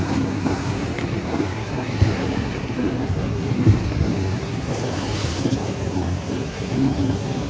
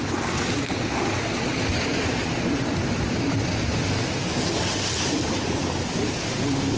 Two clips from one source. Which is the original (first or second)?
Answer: second